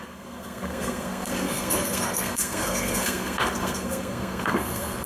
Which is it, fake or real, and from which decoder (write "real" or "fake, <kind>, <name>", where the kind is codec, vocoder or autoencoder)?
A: fake, codec, SNAC